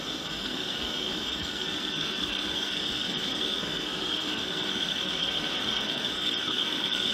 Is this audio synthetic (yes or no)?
yes